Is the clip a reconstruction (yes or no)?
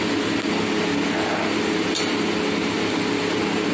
no